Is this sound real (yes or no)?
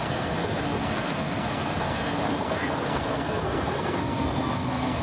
no